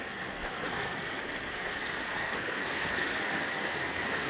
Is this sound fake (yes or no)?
yes